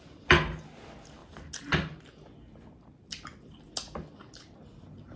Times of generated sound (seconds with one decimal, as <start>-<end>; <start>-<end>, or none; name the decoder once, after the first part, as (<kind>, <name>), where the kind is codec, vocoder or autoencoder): none